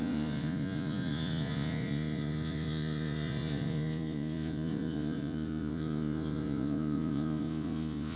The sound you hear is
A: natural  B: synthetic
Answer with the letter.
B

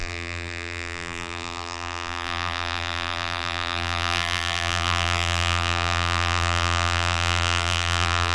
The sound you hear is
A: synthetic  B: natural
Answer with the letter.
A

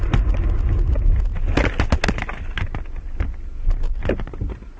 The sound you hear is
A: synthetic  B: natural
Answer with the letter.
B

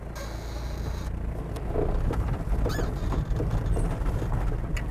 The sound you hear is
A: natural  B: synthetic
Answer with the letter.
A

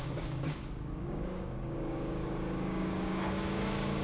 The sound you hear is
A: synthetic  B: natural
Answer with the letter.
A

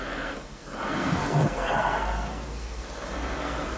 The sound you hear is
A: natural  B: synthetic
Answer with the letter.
B